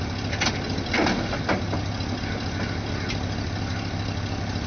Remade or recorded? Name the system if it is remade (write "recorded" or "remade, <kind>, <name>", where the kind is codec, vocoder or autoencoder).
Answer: recorded